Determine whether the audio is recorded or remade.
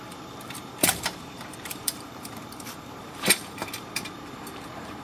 remade